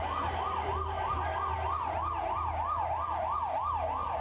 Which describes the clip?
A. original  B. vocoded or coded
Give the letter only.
A